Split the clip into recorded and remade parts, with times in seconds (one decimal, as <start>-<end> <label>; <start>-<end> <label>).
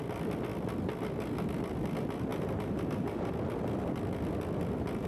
0.0-2.3 recorded; 2.3-3.3 remade; 3.3-5.1 recorded